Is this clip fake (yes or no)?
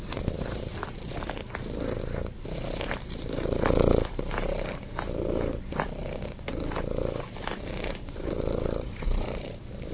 no